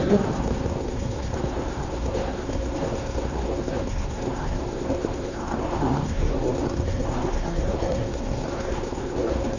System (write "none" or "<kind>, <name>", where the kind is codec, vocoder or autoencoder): codec, SNAC